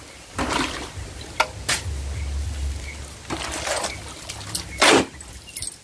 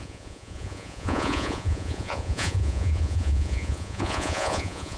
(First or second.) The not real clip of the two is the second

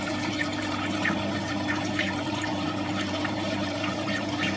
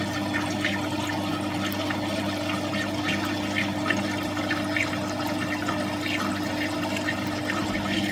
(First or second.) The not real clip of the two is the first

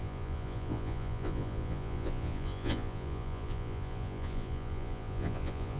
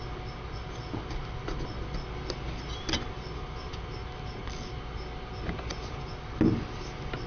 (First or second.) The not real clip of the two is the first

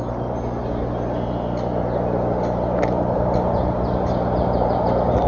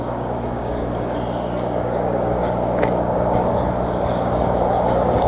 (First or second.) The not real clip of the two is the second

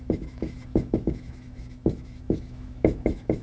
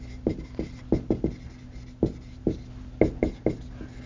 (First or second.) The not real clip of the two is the first